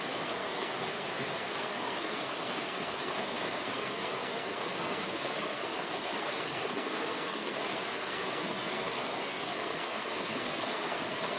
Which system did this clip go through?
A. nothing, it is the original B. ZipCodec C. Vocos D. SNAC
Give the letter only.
D